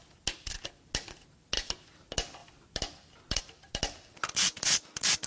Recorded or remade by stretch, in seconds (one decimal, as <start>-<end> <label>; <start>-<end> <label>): 0.0-5.3 recorded